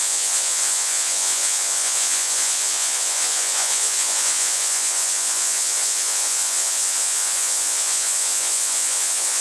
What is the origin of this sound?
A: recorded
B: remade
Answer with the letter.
B